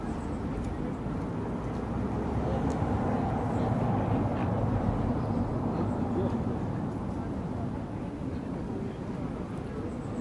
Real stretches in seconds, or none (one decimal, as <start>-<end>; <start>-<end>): 0.0-10.2